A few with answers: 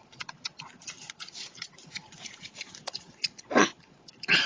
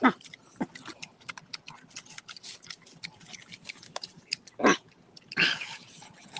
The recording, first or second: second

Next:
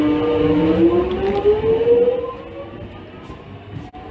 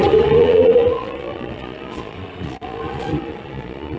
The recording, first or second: first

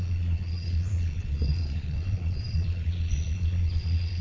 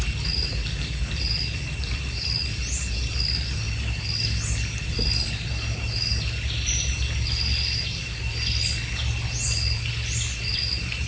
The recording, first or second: second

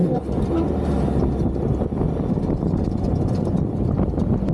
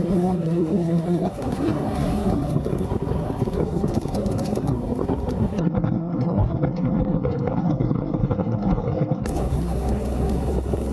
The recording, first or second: first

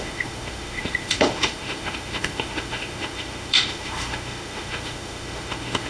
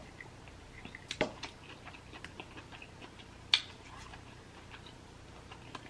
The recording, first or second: second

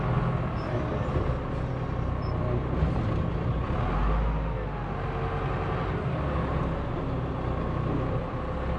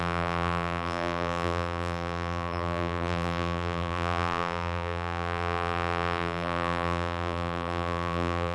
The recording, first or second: first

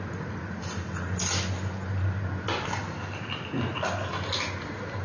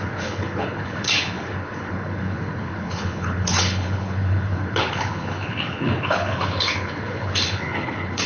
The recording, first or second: first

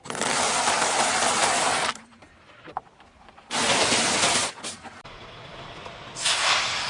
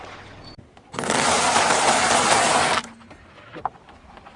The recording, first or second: second